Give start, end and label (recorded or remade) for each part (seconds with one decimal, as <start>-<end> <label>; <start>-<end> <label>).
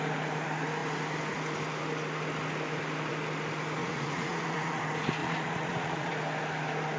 0.0-3.8 recorded; 3.8-4.8 remade; 4.8-5.2 recorded; 5.2-6.1 remade; 6.1-7.0 recorded